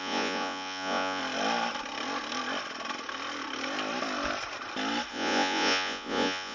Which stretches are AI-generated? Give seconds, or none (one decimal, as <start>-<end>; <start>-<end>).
0.0-1.2; 5.1-6.5